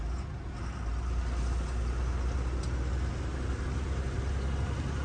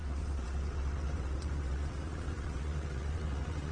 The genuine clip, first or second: first